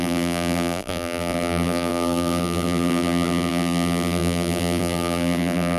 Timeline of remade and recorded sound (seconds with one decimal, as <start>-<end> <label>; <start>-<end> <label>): 0.0-5.8 remade